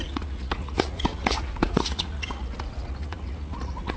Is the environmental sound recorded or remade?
remade